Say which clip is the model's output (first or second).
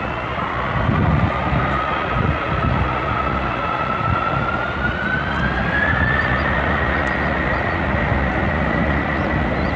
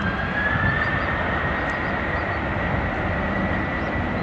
first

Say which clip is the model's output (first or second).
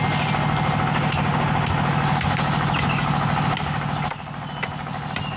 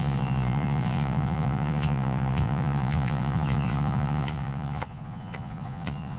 second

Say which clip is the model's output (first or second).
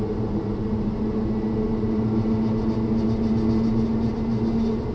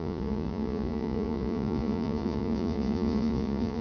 second